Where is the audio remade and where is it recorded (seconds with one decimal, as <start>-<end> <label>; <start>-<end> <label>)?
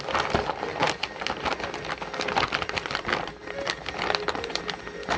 0.0-5.2 recorded